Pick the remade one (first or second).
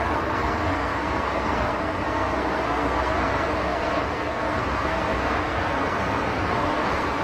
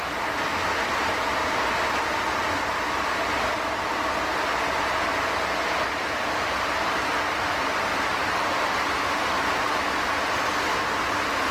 first